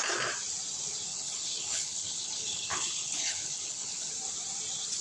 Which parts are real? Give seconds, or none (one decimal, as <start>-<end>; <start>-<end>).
0.0-1.1; 4.1-5.0